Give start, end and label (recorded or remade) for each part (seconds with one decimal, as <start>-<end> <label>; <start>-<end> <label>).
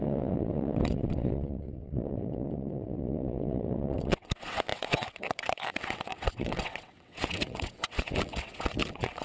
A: 0.0-9.2 remade